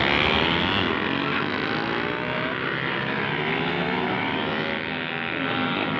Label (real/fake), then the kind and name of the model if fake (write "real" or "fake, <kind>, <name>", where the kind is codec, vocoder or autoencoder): real